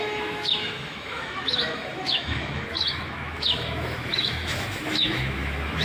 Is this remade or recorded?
remade